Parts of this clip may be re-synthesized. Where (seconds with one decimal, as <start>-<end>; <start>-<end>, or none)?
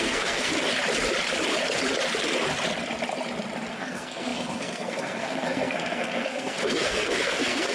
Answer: 0.0-0.5; 3.7-7.7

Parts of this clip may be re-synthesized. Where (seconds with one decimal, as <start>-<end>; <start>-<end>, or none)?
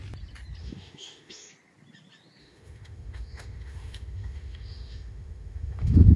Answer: 0.6-1.5; 2.4-6.2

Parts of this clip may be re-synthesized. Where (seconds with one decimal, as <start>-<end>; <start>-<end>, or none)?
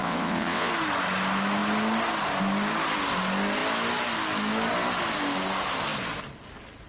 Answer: 0.0-0.7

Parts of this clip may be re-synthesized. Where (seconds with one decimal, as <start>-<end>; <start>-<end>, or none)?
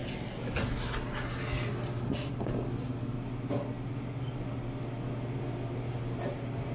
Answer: none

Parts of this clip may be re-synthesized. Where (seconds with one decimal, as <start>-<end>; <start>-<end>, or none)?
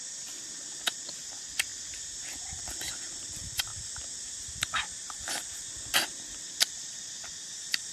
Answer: 0.0-7.9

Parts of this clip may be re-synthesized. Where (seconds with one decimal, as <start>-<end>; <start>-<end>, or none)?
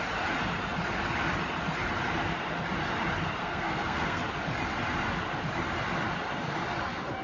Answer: 3.4-4.2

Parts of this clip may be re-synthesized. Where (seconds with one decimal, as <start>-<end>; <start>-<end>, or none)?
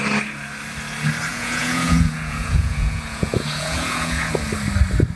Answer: 1.3-4.3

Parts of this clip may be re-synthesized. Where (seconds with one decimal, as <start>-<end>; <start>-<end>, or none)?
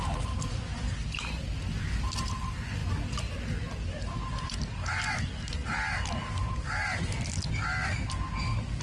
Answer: none